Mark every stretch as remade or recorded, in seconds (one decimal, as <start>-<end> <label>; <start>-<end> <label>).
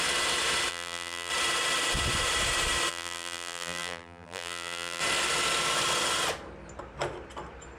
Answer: 0.0-0.7 recorded; 0.7-1.3 remade; 1.3-2.9 recorded; 2.9-5.0 remade; 5.0-7.8 recorded